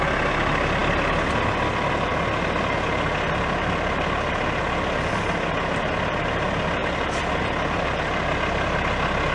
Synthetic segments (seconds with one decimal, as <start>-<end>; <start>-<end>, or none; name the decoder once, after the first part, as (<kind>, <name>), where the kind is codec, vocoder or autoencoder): none